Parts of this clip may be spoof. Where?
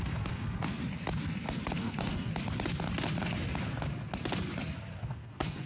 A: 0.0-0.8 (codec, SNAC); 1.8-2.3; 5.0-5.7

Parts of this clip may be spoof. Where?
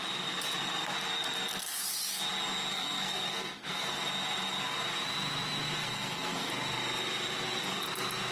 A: 2.7-4.0 (codec, SNAC); 5.8-6.5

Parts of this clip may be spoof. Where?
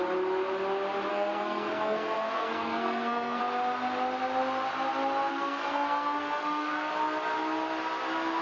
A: 1.1-3.4 (codec, SNAC); 5.3-6.9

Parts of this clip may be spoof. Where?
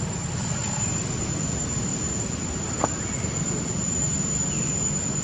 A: none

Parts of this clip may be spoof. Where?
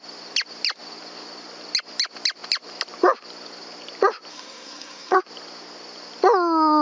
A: 4.3-5.2 (codec, SNAC)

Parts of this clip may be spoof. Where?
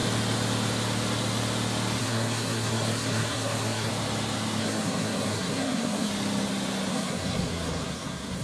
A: 2.0-3.9 (codec, SNAC); 4.6-6.1; 6.9-8.4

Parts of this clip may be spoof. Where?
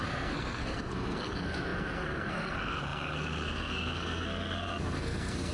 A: 0.0-5.5 (codec, SNAC)